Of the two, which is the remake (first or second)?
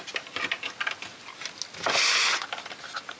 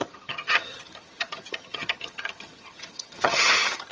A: second